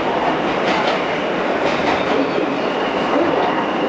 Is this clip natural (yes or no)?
yes